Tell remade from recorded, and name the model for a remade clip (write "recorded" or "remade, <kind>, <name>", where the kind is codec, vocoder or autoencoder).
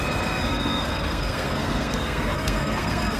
remade, codec, SNAC